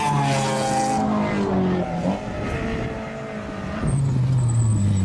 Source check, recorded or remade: recorded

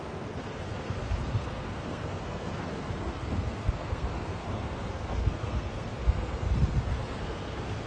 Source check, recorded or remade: remade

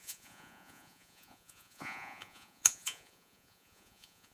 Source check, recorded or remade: remade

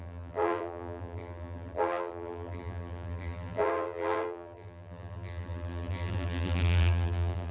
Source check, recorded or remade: remade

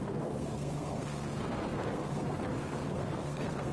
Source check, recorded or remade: remade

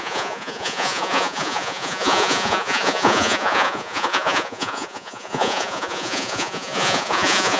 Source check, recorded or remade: remade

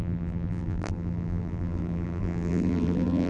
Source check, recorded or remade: remade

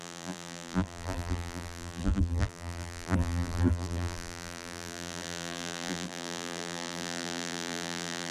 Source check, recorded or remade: remade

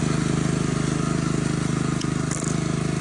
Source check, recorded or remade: recorded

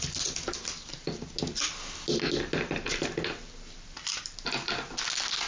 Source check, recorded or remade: recorded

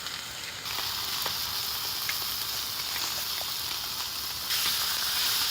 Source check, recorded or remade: recorded